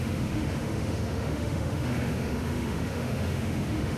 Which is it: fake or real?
fake